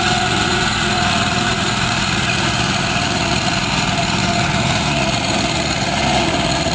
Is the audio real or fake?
fake